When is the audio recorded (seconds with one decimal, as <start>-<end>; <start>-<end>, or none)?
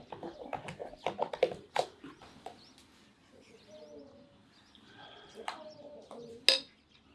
0.0-7.1